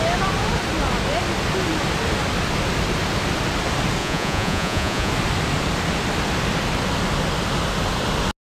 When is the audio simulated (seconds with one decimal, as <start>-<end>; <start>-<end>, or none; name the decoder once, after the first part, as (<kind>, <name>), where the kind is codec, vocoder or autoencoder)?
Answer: 4.0-5.1 (vocoder, Vocos)